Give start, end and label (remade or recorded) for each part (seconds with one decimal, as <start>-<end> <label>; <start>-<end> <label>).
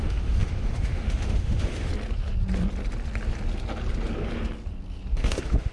0.0-1.9 remade; 1.9-5.1 recorded; 5.1-5.7 remade